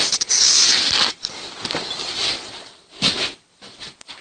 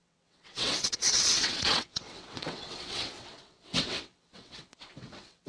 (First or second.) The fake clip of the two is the second